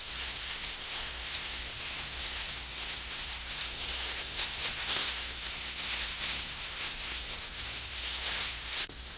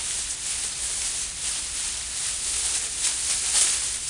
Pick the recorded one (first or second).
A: second